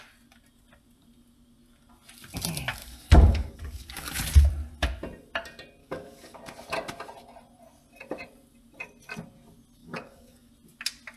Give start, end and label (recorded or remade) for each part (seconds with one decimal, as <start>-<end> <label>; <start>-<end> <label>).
0.0-2.7 recorded; 2.7-4.2 remade; 4.2-5.8 recorded; 5.8-6.4 remade; 6.4-9.8 recorded; 9.8-10.5 remade; 10.5-11.2 recorded